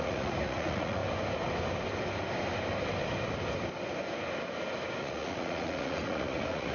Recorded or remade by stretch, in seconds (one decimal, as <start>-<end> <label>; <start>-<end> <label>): 0.0-1.0 remade; 1.0-5.0 recorded; 5.0-6.7 remade